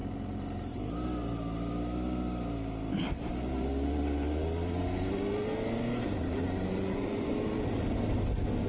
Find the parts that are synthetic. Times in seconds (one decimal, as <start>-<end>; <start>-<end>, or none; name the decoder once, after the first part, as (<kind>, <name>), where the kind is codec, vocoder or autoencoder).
6.8-7.3 (vocoder, Vocos)

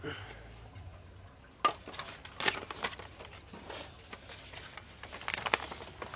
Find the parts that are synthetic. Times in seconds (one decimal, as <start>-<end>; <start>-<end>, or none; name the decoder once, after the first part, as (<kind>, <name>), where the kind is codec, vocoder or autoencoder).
none

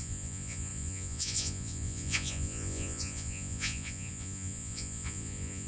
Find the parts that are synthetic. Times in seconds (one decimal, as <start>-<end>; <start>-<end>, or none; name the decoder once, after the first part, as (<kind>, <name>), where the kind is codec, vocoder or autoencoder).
0.0-5.7 (vocoder, Vocos)

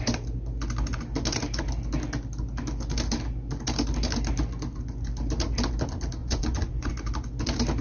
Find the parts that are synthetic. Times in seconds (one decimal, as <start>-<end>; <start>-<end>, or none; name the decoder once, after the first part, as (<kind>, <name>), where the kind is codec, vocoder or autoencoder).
6.2-6.9 (vocoder, Vocos)